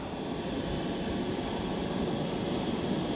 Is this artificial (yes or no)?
no